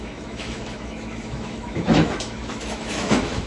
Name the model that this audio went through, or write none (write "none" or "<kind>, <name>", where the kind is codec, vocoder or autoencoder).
autoencoder, DAC-VAE